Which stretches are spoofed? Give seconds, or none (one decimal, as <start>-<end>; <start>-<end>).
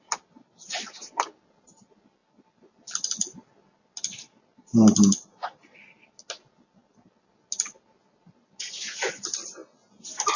none